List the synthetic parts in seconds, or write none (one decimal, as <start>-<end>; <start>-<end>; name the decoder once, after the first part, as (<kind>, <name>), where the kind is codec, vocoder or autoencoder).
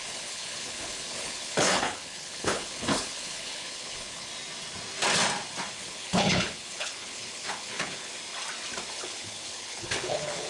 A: 0.0-4.3 (codec, HILCodec); 5.7-8.1; 9.0-10.5